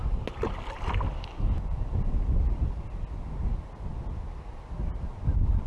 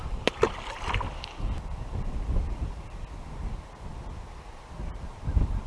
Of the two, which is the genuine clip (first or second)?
first